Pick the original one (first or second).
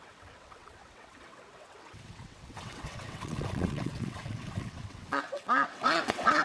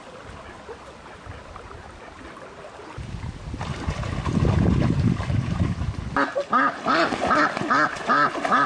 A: second